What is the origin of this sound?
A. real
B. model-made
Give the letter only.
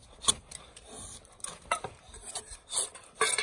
A